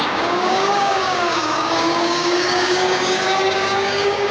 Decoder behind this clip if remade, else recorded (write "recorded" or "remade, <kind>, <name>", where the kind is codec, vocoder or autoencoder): remade, codec, DAC